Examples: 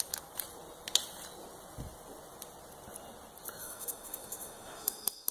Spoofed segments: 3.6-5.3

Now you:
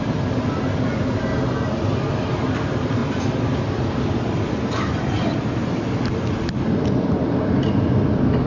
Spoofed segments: 3.0-7.4

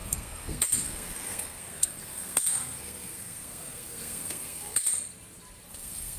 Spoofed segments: 0.0-4.9; 5.7-6.2

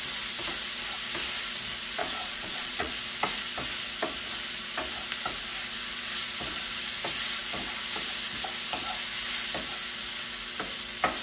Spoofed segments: 2.0-2.9

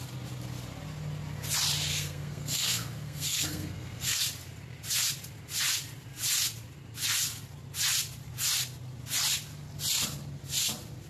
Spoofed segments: 1.9-4.2

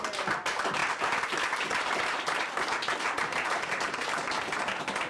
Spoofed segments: none

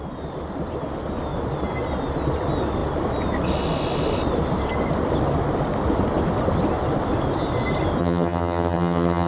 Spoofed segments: 8.0-9.3

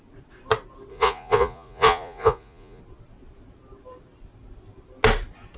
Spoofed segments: 0.9-2.8